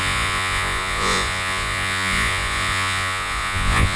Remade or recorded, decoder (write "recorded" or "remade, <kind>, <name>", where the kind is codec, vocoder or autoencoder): remade, vocoder, Vocos